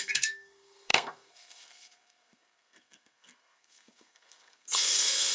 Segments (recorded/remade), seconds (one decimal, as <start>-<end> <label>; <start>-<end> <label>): 0.0-5.3 remade